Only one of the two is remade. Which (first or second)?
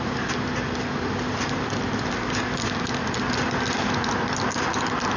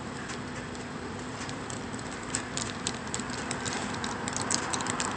second